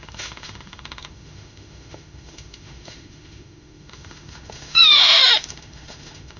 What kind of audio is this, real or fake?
fake